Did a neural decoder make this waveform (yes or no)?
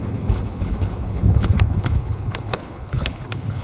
yes